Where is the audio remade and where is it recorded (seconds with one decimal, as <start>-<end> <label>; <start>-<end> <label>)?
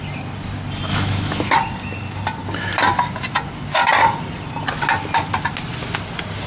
0.0-0.9 recorded; 0.9-1.5 remade; 1.5-6.5 recorded